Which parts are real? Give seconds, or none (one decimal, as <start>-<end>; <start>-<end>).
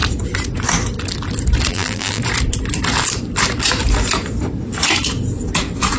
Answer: 0.0-1.7; 2.2-6.0